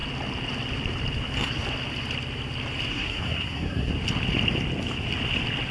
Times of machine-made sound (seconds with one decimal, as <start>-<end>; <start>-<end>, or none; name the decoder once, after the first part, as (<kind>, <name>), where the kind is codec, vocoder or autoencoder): 2.9-3.9 (codec, SNAC)